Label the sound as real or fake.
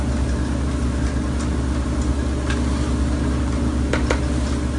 real